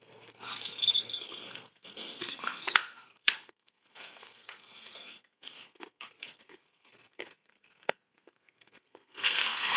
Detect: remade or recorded remade